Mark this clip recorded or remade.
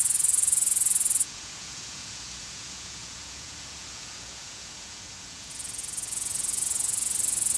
remade